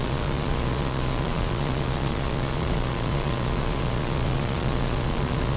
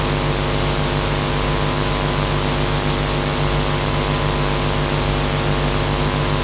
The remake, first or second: first